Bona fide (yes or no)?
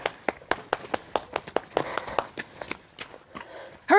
yes